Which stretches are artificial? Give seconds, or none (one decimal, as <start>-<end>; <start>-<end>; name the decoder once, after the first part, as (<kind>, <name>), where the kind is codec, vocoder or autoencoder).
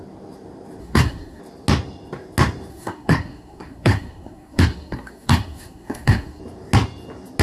0.8-1.4 (codec, SNAC); 2.7-6.4